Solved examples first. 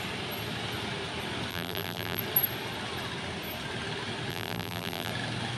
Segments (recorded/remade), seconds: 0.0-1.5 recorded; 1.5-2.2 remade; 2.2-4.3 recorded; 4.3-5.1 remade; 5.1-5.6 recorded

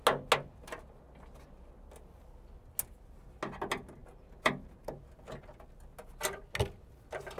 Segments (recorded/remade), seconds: 0.0-7.4 recorded

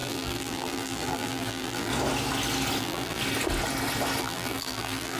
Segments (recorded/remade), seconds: 0.0-1.9 remade; 1.9-2.8 recorded; 2.8-3.2 remade; 3.2-4.2 recorded; 4.2-5.2 remade

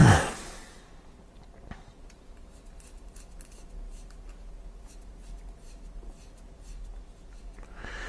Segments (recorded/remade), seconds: 0.0-8.1 recorded

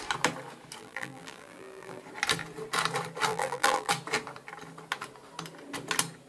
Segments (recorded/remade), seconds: 0.0-0.8 recorded; 0.8-2.0 remade; 2.0-3.3 recorded; 3.3-3.9 remade; 3.9-6.3 recorded

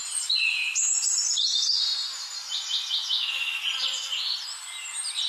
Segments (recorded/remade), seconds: 0.0-5.3 recorded

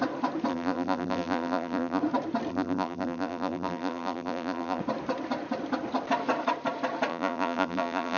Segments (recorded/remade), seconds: 0.0-0.5 recorded; 0.5-2.0 remade; 2.0-2.5 recorded; 2.5-4.8 remade; 4.8-7.1 recorded; 7.1-8.2 remade

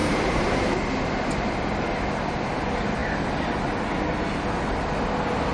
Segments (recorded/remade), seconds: 0.0-0.7 remade; 0.7-5.5 recorded